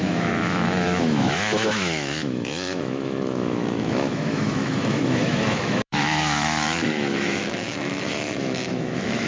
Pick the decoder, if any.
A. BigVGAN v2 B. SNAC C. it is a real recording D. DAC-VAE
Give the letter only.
D